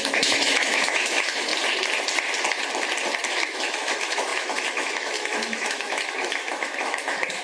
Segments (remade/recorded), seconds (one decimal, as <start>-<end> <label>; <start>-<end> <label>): 0.0-1.5 remade; 1.5-3.3 recorded; 3.3-7.4 remade